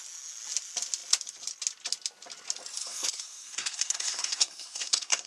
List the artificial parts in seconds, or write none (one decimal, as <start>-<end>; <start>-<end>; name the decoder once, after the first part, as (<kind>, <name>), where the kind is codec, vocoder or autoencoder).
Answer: 2.8-5.3 (codec, SNAC)